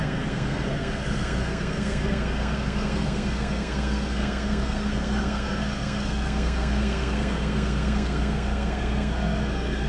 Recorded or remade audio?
remade